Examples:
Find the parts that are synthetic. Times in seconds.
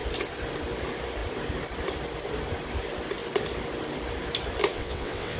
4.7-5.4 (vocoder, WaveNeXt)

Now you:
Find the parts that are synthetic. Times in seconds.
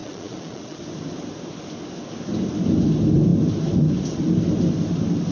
0.0-0.8 (vocoder, Vocos)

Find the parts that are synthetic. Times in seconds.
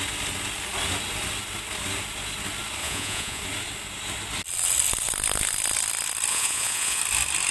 2.8-3.4 (vocoder, Vocos); 6.3-7.0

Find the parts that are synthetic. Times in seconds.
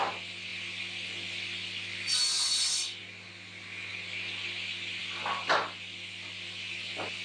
none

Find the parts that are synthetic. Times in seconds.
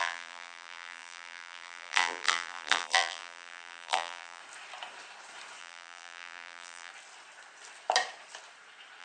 0.0-4.4 (vocoder, BigVGAN v2); 5.6-6.9